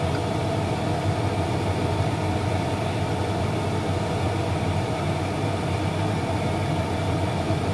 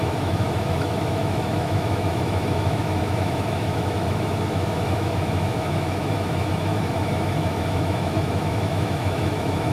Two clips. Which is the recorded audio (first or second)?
first